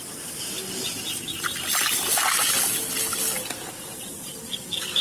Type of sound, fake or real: real